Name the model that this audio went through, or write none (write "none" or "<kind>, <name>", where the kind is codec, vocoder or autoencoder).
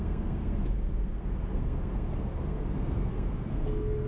codec, SNAC